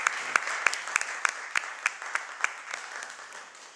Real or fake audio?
real